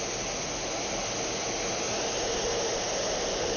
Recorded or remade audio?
recorded